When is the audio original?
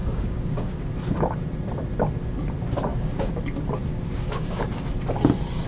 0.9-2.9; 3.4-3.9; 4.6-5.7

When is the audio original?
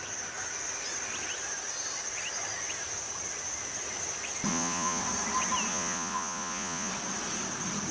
0.0-4.5; 5.0-5.7; 6.9-7.9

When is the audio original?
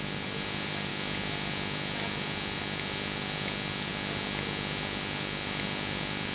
0.0-6.3